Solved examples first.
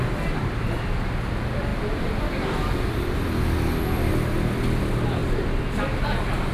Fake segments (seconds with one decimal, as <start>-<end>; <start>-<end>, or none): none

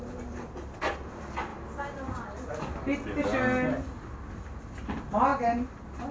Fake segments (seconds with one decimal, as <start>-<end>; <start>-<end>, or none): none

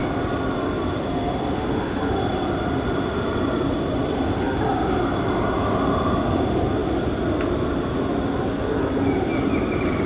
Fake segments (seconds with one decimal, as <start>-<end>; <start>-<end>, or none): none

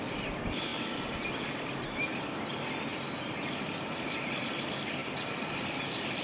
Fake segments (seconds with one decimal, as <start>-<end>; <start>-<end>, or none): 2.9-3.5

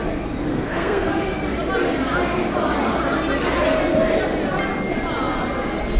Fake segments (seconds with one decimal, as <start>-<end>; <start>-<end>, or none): 0.5-1.1